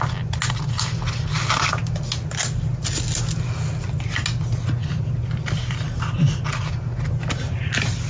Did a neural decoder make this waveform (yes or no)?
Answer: no